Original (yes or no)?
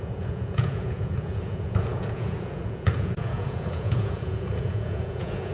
no